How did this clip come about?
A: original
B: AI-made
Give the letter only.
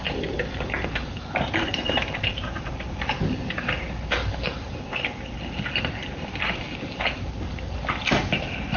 A